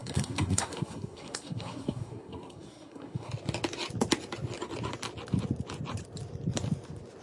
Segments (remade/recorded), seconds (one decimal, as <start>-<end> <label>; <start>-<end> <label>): 0.0-3.3 remade; 3.3-7.2 recorded